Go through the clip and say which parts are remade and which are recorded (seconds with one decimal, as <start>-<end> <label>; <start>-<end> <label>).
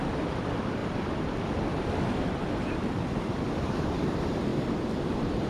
0.0-0.8 recorded; 0.8-3.8 remade; 3.8-4.5 recorded; 4.5-5.5 remade